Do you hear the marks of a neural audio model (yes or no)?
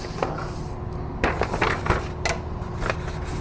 no